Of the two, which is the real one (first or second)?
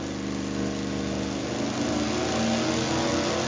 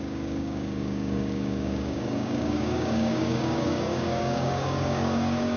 first